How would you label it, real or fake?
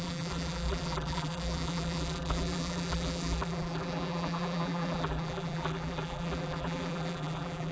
fake